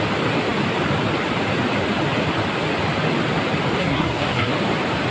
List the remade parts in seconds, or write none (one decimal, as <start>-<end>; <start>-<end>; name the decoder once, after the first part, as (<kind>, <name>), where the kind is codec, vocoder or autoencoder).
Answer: 3.8-4.5 (codec, SNAC)